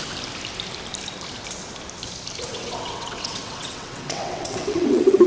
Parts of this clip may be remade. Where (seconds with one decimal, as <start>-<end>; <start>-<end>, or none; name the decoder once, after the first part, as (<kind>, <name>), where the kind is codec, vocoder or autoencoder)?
2.5-5.3 (vocoder, WaveNeXt)